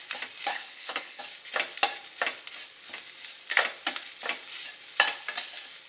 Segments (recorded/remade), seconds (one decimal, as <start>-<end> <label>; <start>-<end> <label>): 0.0-0.5 recorded; 0.5-1.2 remade; 1.2-5.9 recorded